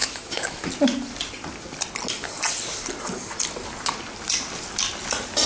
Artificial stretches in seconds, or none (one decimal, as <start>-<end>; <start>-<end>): 0.0-0.7